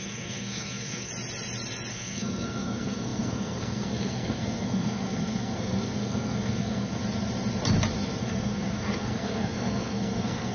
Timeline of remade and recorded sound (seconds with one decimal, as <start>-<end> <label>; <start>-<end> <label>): 0.0-1.1 remade; 1.1-1.9 recorded; 1.9-7.0 remade; 7.0-8.2 recorded; 8.2-10.5 remade